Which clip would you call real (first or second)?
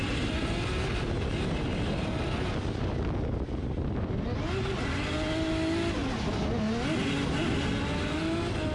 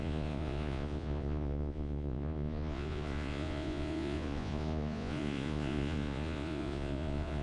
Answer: first